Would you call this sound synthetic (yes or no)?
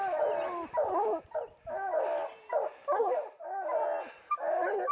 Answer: no